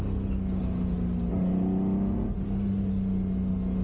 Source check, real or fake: real